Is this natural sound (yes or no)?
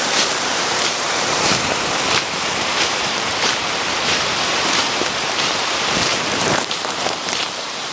no